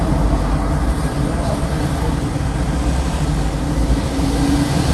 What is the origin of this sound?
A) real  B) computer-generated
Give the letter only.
A